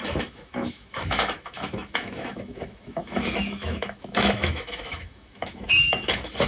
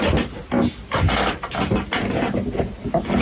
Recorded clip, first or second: second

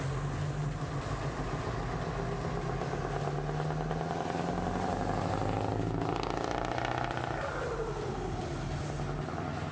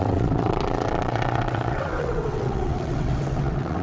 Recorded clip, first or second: first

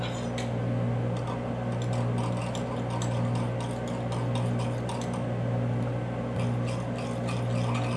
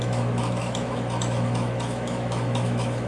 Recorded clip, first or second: first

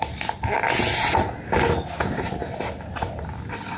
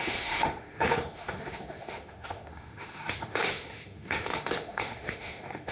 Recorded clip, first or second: first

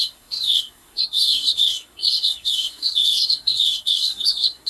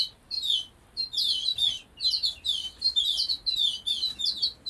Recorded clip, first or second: second